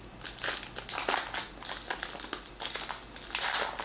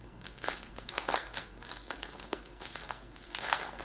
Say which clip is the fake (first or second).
second